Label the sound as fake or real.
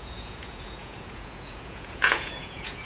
fake